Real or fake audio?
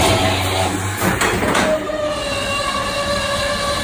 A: real